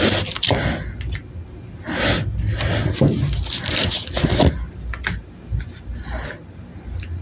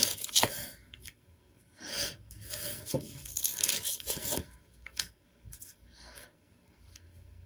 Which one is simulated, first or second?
second